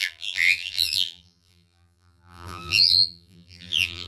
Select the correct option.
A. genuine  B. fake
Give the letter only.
B